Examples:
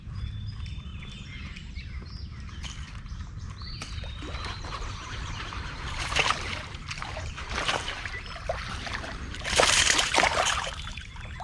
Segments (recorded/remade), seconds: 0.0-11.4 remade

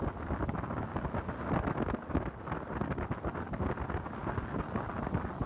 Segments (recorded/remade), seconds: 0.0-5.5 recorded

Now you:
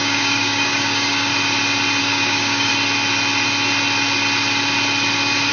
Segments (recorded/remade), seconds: 0.0-1.3 remade; 1.3-2.0 recorded; 2.0-2.7 remade; 2.7-5.5 recorded